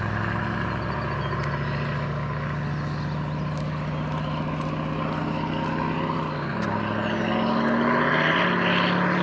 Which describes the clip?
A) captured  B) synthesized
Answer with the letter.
A